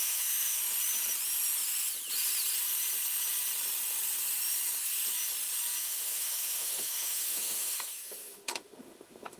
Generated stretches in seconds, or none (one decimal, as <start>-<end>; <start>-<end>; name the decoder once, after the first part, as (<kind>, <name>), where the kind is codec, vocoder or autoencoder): 0.0-0.6 (autoencoder, DAC-VAE); 5.8-9.4